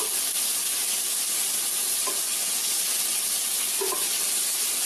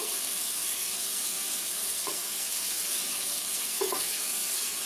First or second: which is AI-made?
second